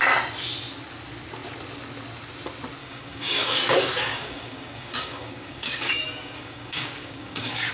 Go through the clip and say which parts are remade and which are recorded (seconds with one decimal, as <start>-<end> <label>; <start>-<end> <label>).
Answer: 0.0-2.8 recorded; 2.8-3.6 remade; 3.6-4.1 recorded; 4.1-7.7 remade